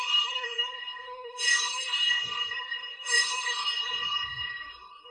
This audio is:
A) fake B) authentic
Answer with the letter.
A